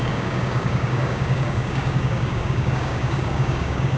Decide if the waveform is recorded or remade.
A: remade